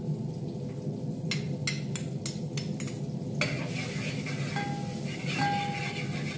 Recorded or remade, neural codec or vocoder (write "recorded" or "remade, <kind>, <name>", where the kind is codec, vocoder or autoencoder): recorded